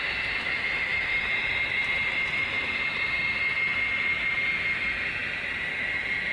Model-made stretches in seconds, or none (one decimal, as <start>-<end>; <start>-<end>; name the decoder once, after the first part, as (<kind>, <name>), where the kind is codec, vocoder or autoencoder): 0.9-3.1 (vocoder, BigVGAN v2); 5.2-5.7